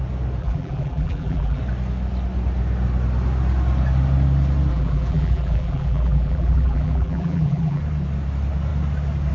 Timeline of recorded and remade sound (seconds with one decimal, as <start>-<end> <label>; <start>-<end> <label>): 0.0-0.4 recorded; 0.4-1.6 remade; 1.6-4.7 recorded; 4.7-7.8 remade; 7.8-9.3 recorded